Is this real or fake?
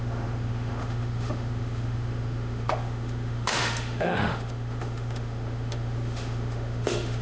fake